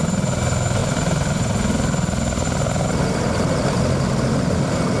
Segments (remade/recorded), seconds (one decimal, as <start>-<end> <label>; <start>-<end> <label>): 0.0-5.0 recorded